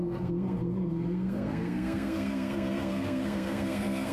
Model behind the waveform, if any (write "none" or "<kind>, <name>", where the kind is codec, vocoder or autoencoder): codec, SNAC